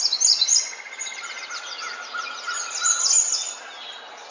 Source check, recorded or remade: recorded